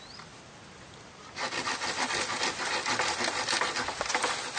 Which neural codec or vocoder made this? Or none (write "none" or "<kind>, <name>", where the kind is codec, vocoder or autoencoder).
none